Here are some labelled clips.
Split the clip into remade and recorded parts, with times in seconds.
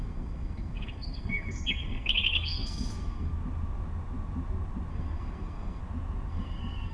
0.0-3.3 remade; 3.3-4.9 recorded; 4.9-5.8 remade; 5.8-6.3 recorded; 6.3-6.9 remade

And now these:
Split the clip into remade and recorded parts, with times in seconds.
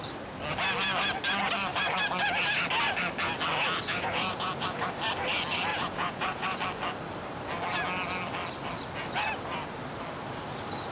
0.0-3.8 recorded; 3.8-4.5 remade; 4.5-5.7 recorded; 5.7-6.6 remade; 6.6-10.9 recorded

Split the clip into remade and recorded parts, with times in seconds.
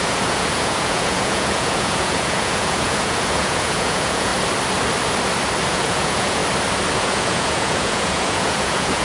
0.0-4.3 remade; 4.3-5.7 recorded; 5.7-6.4 remade; 6.4-7.0 recorded; 7.0-9.0 remade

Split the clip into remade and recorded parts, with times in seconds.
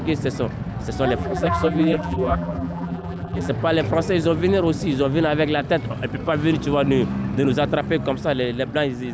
0.0-1.2 recorded; 1.2-3.5 remade; 3.5-9.1 recorded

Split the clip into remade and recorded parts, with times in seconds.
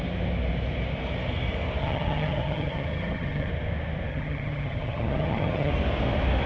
0.0-1.8 recorded; 1.8-3.5 remade; 3.5-4.1 recorded; 4.1-5.7 remade; 5.7-6.5 recorded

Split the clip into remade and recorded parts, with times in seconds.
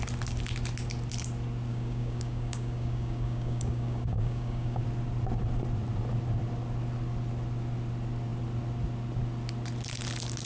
0.0-1.7 recorded; 1.7-4.8 remade; 4.8-10.5 recorded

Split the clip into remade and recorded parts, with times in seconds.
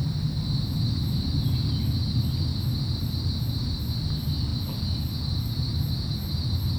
0.0-6.8 recorded